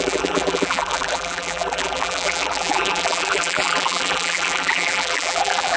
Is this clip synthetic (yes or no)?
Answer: yes